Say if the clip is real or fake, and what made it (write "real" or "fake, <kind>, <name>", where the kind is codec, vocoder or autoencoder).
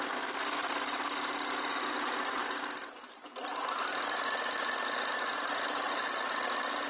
real